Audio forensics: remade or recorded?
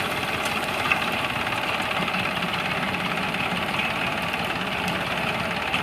recorded